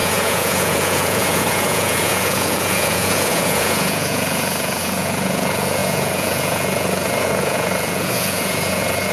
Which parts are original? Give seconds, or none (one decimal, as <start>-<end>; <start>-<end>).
none